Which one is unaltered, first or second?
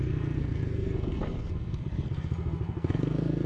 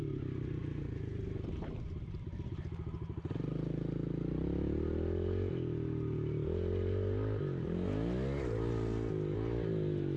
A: second